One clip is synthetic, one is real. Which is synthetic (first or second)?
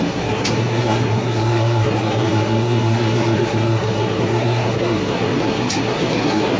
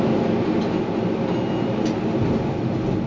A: first